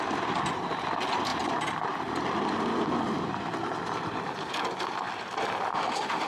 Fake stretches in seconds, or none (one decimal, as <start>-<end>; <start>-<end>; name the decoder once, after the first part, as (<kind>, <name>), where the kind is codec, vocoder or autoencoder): 5.7-6.3 (autoencoder, DAC-VAE)